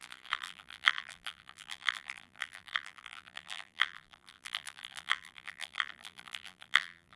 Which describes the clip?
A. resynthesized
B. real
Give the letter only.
A